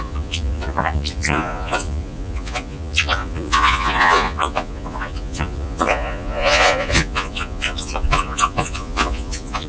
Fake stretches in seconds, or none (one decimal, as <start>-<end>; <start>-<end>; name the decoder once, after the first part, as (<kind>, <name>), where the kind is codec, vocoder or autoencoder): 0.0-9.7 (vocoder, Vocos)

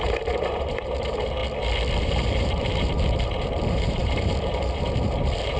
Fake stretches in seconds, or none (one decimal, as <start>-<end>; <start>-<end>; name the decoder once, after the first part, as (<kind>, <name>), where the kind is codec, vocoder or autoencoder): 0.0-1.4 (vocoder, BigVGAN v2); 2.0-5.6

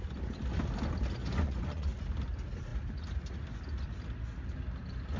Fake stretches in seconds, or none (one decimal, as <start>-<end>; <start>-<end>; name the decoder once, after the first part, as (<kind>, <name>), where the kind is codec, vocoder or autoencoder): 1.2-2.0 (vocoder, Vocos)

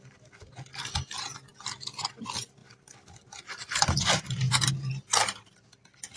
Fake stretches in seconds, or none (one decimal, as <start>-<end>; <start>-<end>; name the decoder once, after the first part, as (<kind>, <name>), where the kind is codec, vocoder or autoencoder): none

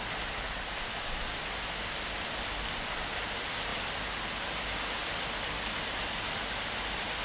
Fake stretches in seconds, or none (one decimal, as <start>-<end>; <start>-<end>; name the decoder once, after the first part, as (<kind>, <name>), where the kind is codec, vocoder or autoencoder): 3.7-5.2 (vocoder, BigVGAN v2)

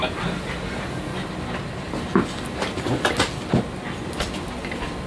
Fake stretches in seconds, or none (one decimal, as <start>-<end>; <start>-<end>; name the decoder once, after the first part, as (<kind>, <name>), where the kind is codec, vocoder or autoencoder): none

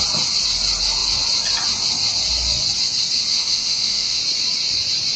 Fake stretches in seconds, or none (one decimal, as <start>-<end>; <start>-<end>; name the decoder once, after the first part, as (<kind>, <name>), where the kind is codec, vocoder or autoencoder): 3.3-4.2 (autoencoder, DAC-VAE)